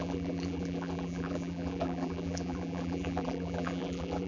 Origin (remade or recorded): remade